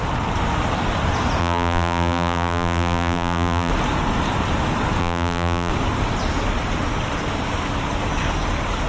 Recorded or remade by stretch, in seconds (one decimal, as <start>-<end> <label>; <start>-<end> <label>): 0.0-1.4 recorded; 1.4-3.7 remade; 3.7-5.0 recorded; 5.0-5.7 remade; 5.7-8.9 recorded